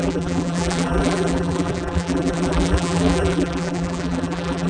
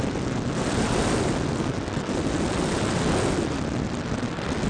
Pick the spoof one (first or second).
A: first